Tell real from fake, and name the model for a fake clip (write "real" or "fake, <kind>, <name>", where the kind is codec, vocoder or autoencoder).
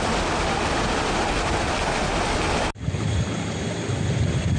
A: real